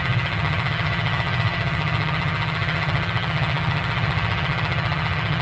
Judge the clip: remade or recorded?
remade